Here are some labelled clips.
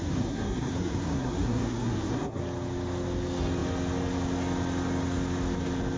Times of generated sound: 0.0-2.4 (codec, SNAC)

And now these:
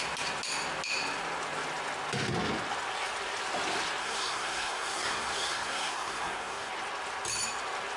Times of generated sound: 4.0-6.7 (codec, SNAC)

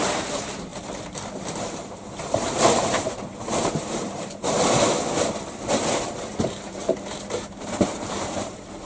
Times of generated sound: 0.0-0.7 (vocoder, BigVGAN v2); 1.4-8.9

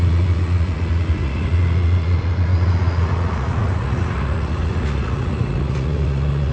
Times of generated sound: 0.0-6.5 (vocoder, Vocos)